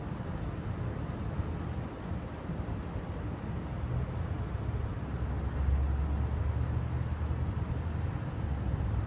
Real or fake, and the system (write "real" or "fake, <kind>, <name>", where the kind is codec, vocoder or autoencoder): real